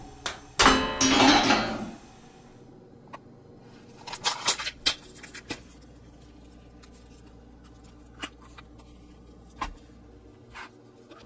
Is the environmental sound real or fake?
real